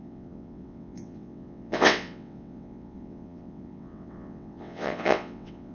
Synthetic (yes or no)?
yes